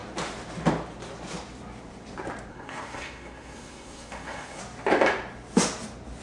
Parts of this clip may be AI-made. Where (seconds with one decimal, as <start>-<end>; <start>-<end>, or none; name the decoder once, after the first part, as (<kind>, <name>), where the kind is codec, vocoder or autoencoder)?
2.5-4.6 (codec, SNAC)